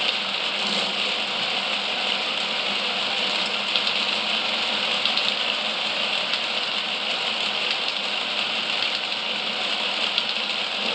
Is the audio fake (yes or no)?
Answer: no